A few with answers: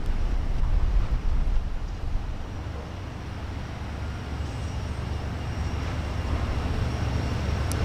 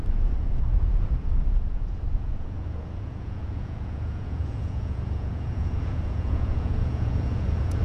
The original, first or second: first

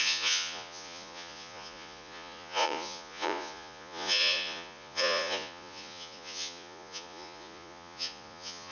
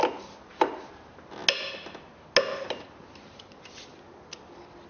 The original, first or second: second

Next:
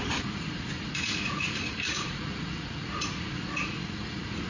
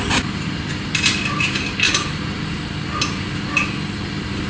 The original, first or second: second